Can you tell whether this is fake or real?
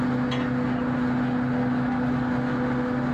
real